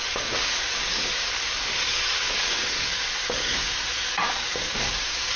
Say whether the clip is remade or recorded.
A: remade